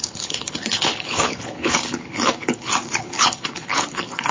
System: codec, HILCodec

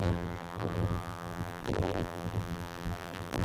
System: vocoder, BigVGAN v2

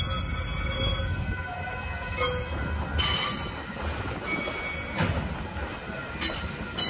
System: none